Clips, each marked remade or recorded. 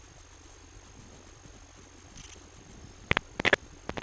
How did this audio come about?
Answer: recorded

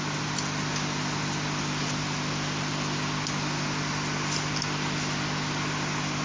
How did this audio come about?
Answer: recorded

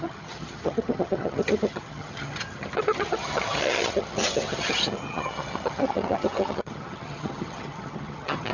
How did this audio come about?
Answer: remade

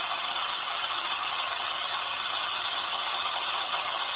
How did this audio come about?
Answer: remade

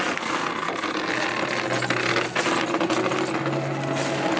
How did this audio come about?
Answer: recorded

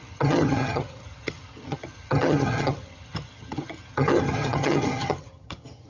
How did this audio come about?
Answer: remade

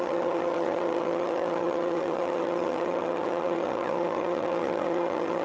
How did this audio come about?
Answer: remade